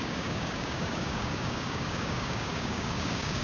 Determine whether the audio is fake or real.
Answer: fake